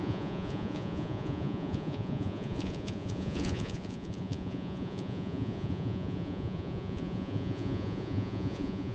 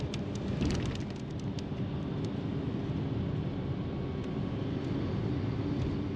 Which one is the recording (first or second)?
second